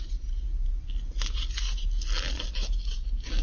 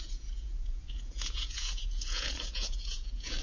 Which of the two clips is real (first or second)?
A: first